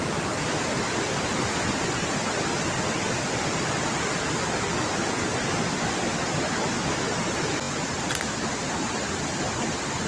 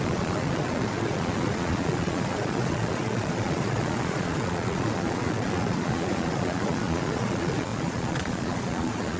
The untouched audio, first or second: first